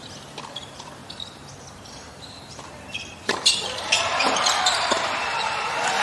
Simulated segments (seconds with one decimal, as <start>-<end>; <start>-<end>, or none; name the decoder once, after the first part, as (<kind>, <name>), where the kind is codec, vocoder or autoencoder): 0.0-1.0 (vocoder, BigVGAN v2); 1.5-6.0

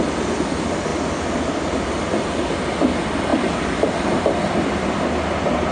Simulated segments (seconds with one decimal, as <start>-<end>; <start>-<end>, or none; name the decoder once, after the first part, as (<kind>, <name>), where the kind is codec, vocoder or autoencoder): none

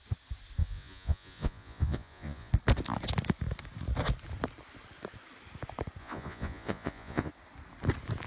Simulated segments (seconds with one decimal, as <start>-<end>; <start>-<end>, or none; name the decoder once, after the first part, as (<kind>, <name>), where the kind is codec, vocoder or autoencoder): 0.6-2.5 (vocoder, Vocos); 6.0-7.3

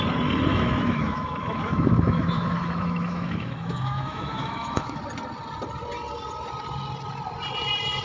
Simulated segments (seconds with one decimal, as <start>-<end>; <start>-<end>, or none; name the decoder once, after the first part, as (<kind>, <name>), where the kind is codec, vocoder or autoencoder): 0.5-5.0 (autoencoder, DAC-VAE)

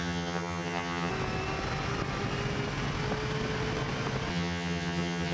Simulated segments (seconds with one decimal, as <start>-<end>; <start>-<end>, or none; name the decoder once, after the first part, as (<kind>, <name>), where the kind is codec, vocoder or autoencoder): 0.0-1.1 (vocoder, HiFi-GAN); 4.3-5.3

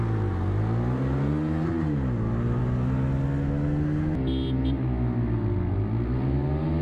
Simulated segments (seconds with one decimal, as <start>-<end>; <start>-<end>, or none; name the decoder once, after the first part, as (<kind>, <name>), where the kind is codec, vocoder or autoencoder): none

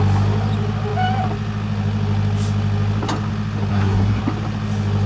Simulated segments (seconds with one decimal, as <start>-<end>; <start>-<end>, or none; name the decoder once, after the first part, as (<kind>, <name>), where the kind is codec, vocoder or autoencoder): 3.7-4.2 (codec, SNAC)

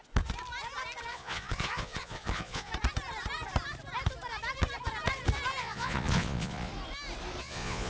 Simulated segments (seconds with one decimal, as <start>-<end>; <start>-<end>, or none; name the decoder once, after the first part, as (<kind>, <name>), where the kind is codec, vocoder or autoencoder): 1.1-2.7 (vocoder, Vocos); 5.6-6.7; 7.4-7.9